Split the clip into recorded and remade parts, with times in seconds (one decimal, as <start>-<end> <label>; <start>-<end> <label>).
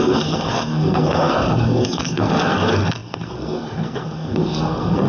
0.0-5.1 remade